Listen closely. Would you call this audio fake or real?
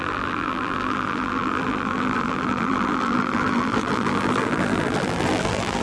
fake